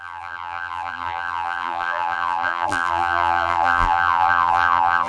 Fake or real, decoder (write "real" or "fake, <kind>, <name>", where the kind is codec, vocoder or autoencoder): fake, vocoder, BigVGAN v2